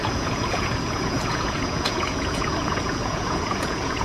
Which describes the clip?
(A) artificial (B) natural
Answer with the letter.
A